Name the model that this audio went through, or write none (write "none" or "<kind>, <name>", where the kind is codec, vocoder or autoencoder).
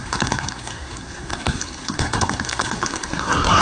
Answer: codec, SNAC